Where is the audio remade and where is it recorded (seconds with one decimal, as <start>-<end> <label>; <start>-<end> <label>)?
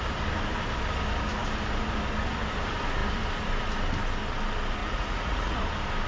0.0-4.8 recorded; 4.8-5.6 remade; 5.6-6.1 recorded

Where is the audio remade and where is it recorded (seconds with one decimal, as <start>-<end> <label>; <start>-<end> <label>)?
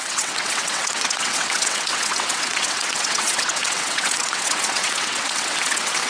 0.0-6.1 remade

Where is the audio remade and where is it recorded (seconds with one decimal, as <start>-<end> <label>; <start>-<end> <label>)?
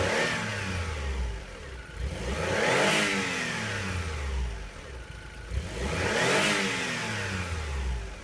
0.0-8.2 recorded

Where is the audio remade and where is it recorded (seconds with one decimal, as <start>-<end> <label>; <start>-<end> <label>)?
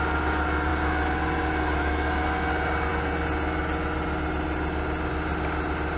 0.0-6.0 recorded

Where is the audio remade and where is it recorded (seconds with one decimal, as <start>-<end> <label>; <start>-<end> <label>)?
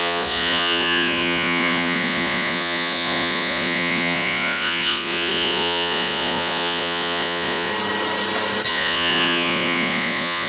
0.0-7.7 remade; 7.7-8.7 recorded; 8.7-10.5 remade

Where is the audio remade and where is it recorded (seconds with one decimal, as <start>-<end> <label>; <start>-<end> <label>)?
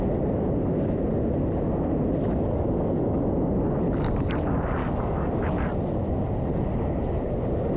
0.0-2.2 recorded; 2.2-3.2 remade; 3.2-4.8 recorded; 4.8-5.3 remade; 5.3-7.8 recorded